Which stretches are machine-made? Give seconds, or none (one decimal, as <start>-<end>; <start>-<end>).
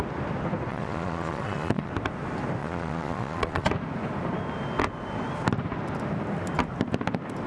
0.7-1.9; 2.6-3.7